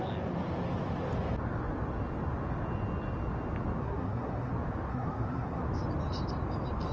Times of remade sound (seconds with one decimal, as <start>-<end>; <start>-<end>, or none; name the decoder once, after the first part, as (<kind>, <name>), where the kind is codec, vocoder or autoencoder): 3.8-4.5 (codec, SNAC); 4.9-5.6